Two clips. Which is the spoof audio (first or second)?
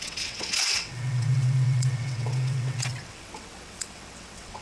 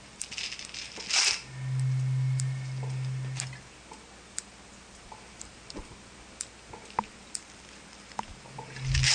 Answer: first